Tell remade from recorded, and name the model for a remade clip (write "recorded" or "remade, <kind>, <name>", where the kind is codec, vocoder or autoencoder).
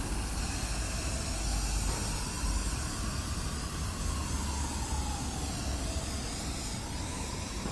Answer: recorded